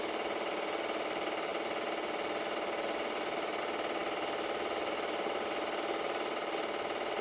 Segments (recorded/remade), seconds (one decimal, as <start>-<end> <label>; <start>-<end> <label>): 0.0-7.2 recorded